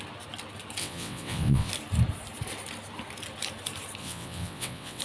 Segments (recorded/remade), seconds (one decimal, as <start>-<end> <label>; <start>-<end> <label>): 0.0-0.8 recorded; 0.8-1.7 remade; 1.7-4.0 recorded; 4.0-5.0 remade